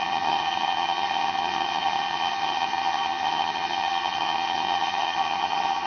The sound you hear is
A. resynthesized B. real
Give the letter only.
A